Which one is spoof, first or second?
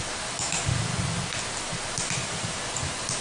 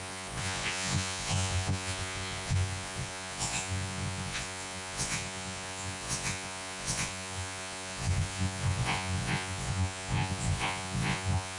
second